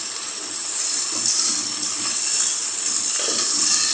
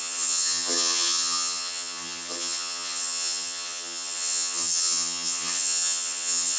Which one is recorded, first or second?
first